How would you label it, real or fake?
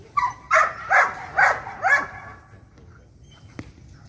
real